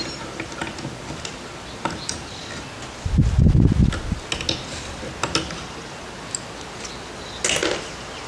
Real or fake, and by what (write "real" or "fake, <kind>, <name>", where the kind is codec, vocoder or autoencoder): real